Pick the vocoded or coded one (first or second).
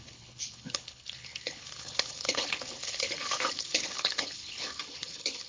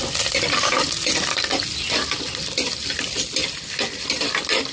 first